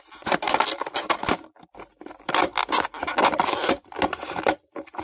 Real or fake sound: fake